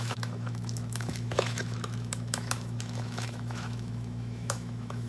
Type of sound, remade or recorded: remade